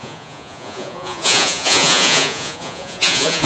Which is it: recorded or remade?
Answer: remade